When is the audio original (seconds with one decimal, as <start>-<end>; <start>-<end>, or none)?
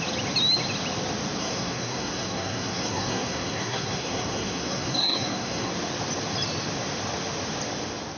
0.0-1.4; 5.7-8.2